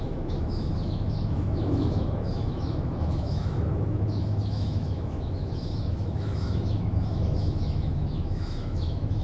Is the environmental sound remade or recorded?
remade